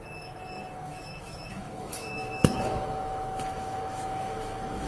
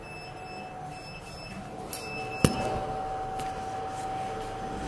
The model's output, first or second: first